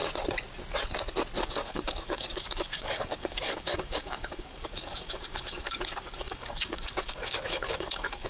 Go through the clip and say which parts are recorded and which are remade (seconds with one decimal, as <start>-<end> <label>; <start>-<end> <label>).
0.0-1.4 recorded; 1.4-8.3 remade